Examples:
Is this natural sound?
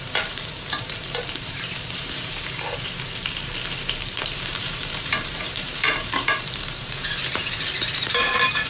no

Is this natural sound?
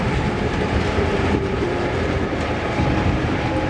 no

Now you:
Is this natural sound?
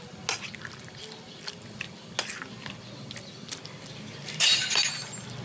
yes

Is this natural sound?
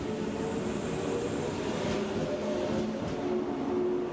yes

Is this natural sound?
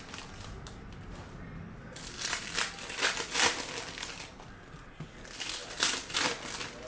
yes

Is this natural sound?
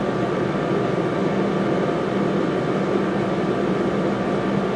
yes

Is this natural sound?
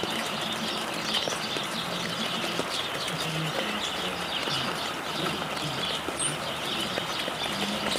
yes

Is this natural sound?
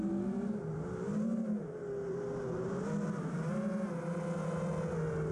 yes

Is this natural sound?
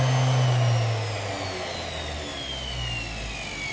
yes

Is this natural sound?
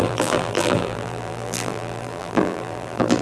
no